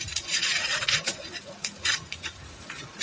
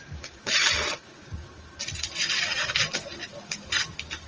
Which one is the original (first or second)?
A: second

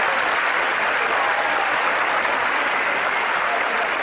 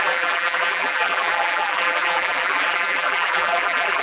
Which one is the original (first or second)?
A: first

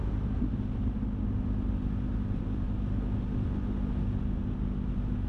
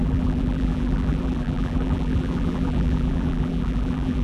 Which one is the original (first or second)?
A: first